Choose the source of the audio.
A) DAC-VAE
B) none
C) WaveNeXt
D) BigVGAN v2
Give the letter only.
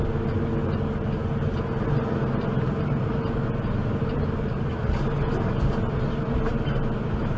B